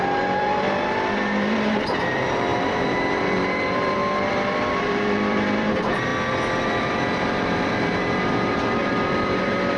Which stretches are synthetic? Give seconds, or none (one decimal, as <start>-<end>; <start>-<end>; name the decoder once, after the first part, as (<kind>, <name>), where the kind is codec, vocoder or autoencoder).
0.0-6.1 (vocoder, BigVGAN v2); 6.8-9.8